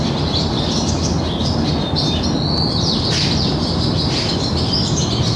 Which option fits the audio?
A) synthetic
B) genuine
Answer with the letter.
B